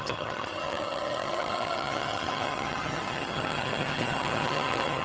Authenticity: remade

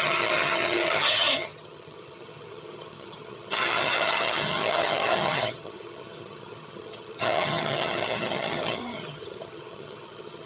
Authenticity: remade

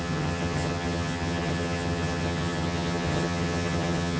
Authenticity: remade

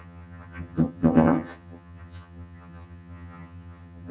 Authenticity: remade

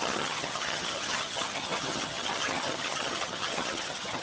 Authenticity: remade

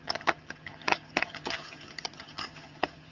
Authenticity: remade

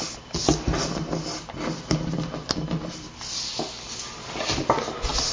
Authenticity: recorded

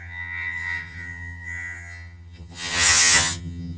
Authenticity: remade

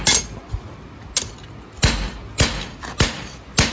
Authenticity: recorded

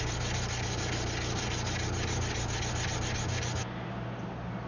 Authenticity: recorded